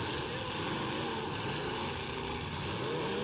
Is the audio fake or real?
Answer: real